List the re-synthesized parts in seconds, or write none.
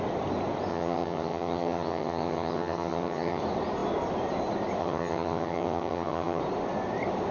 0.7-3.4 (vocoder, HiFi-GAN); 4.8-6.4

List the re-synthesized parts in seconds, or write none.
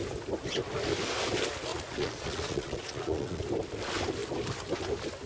1.7-3.4 (vocoder, Vocos)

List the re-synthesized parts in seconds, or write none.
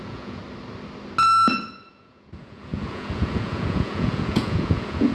0.0-0.4 (vocoder, Vocos); 1.6-5.1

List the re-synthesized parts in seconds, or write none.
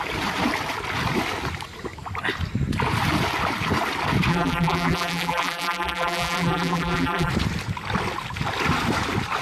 4.3-7.3 (vocoder, BigVGAN v2)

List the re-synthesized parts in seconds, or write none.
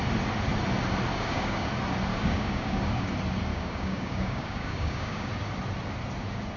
1.1-1.7 (codec, DAC); 2.1-3.1; 3.5-5.3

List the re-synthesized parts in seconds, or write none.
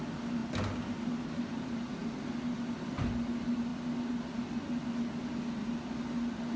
none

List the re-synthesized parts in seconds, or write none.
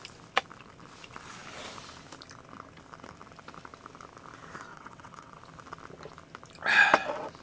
4.7-5.4 (vocoder, WaveNeXt)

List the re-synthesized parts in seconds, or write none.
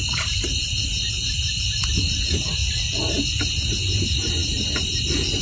0.0-2.6 (vocoder, BigVGAN v2); 3.4-5.4